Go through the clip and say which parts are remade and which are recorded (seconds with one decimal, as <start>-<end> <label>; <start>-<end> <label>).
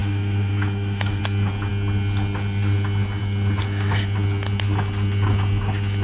0.0-1.2 remade; 1.2-6.0 recorded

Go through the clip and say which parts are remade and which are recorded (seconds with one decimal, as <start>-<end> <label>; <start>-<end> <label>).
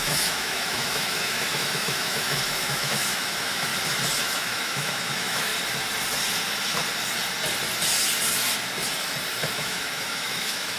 0.0-3.7 remade; 3.7-4.2 recorded; 4.2-5.5 remade; 5.5-9.5 recorded; 9.5-10.8 remade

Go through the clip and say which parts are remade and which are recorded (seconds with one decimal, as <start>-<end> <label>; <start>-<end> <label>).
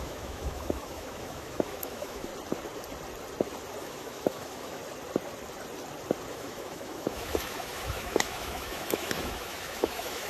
0.0-2.3 remade; 2.3-3.8 recorded; 3.8-4.8 remade; 4.8-6.3 recorded; 6.3-10.3 remade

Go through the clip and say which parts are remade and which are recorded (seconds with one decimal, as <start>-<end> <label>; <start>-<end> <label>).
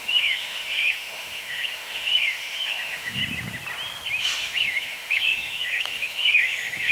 0.0-3.2 remade; 3.2-4.2 recorded; 4.2-6.9 remade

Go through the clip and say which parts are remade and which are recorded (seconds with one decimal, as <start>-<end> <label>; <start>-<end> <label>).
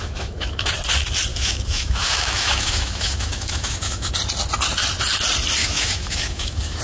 0.0-0.7 remade; 0.7-1.3 recorded; 1.3-4.1 remade; 4.1-5.6 recorded; 5.6-6.8 remade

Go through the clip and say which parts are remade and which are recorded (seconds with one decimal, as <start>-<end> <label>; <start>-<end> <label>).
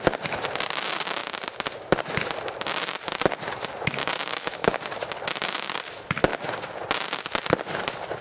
0.0-4.0 recorded; 4.0-4.8 remade; 4.8-8.2 recorded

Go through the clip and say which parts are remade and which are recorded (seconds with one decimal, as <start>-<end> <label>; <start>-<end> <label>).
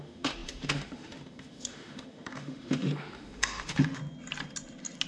0.0-4.0 remade; 4.0-5.1 recorded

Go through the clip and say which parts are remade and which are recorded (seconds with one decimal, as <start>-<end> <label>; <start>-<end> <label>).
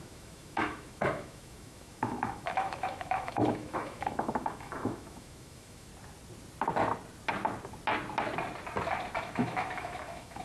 0.0-5.9 remade; 5.9-9.2 recorded; 9.2-10.4 remade